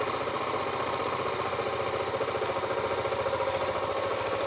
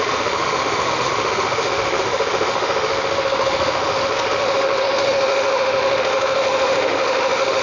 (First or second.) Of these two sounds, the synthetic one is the second